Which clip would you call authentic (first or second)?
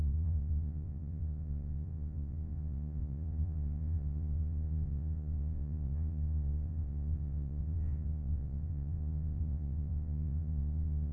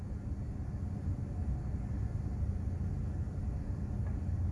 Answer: second